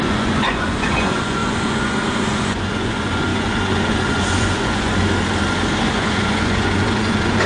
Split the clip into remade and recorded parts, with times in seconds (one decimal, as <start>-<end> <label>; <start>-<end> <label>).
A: 0.0-5.0 remade; 5.0-5.8 recorded; 5.8-7.5 remade